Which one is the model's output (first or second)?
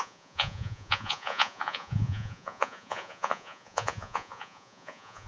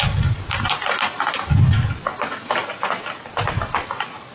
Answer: first